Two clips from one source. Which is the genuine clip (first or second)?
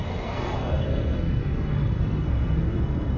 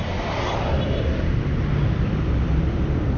second